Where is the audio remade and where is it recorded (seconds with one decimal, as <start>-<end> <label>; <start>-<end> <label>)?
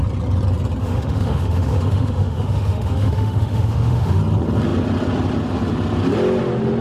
0.0-0.8 recorded; 0.8-4.2 remade; 4.2-6.8 recorded